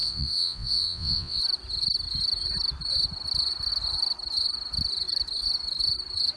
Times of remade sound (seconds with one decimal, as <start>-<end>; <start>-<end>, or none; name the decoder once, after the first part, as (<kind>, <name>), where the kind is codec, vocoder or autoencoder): 0.0-1.4 (vocoder, Vocos)